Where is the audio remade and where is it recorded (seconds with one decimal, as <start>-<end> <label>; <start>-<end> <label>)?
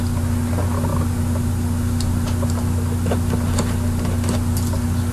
0.0-5.1 recorded